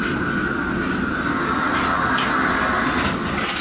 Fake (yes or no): no